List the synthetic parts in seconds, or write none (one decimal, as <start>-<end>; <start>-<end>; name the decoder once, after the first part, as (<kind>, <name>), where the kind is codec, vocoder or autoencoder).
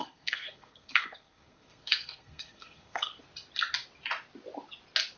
0.0-3.1 (codec, SNAC)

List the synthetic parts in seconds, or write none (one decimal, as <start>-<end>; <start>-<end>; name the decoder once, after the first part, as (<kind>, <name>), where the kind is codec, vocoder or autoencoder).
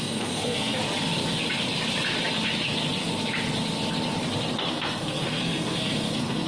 0.0-0.8 (codec, SNAC); 4.7-6.5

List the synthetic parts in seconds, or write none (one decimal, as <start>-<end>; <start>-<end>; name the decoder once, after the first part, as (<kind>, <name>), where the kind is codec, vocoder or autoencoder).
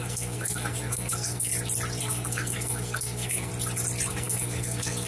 0.0-1.5 (codec, SNAC); 2.0-3.5; 4.1-5.1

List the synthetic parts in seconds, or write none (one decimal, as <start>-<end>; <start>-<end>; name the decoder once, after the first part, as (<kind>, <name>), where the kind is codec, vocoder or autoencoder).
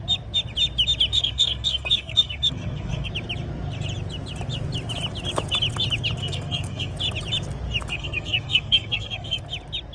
1.1-3.1 (codec, SNAC); 6.2-6.9; 7.9-9.4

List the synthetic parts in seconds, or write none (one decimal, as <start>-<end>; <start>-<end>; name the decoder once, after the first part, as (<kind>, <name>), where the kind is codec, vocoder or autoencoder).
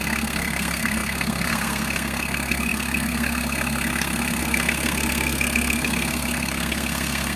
0.0-7.4 (codec, SNAC)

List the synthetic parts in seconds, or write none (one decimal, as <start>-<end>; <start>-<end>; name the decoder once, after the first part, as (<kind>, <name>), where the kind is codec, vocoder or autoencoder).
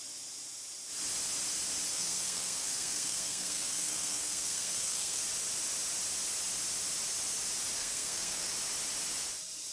1.9-5.2 (codec, SNAC); 7.8-8.5